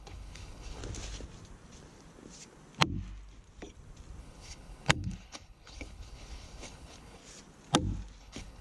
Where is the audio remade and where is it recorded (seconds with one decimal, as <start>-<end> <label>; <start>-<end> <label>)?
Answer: 0.0-0.8 remade; 0.8-4.2 recorded; 4.2-7.2 remade; 7.2-8.2 recorded; 8.2-8.6 remade